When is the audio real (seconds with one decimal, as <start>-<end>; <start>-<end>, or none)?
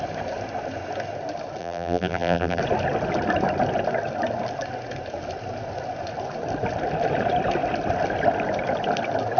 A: 0.0-1.6; 2.6-9.4